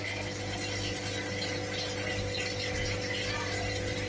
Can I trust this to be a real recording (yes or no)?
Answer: yes